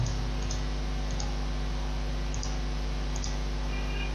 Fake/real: real